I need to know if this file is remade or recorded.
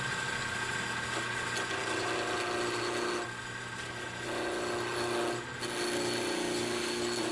recorded